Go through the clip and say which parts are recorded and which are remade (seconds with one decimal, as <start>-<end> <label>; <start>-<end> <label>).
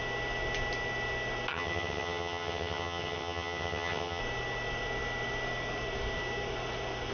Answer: 0.0-1.5 recorded; 1.5-4.2 remade; 4.2-7.1 recorded